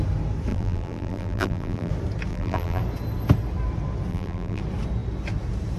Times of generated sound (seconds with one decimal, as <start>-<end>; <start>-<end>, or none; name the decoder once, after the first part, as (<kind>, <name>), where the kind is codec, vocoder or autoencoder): 0.5-1.9 (vocoder, BigVGAN v2); 2.3-2.8; 4.1-4.6